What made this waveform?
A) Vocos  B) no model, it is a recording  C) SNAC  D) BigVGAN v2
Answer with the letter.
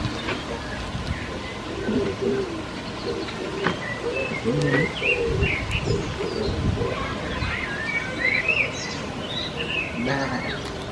B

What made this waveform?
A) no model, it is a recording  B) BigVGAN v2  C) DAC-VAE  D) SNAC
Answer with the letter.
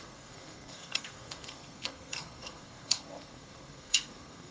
D